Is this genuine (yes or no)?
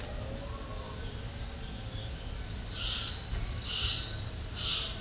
yes